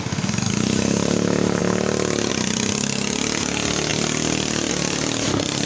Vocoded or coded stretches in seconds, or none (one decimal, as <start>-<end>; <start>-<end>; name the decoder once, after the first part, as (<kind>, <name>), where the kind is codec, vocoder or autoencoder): 3.9-4.7 (vocoder, BigVGAN v2)